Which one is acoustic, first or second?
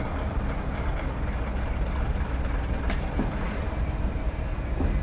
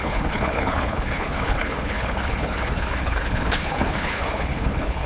first